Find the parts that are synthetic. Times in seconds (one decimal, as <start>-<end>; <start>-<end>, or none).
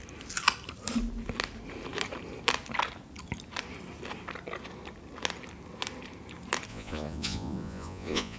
6.7-8.4